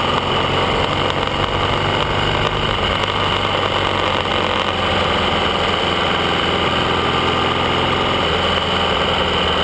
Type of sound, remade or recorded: recorded